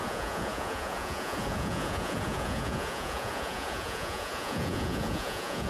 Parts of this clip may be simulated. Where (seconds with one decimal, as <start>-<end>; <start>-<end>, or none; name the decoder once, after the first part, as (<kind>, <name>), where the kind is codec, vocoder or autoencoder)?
0.0-5.7 (vocoder, Vocos)